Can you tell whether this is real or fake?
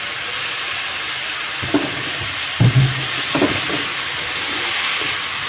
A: real